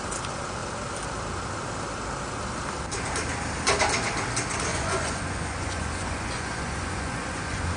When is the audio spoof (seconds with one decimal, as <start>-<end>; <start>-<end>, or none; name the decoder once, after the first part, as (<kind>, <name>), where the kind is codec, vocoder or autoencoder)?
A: 4.7-7.8 (vocoder, Vocos)